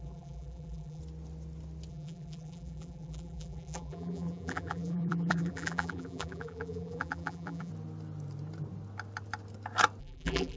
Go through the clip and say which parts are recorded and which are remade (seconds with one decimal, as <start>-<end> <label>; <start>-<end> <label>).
0.0-1.0 remade; 1.0-1.9 recorded; 1.9-7.7 remade; 7.7-10.0 recorded; 10.0-10.6 remade